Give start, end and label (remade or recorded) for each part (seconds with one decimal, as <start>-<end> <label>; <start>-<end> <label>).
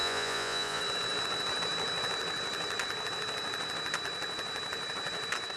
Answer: 0.0-0.8 remade; 0.8-5.6 recorded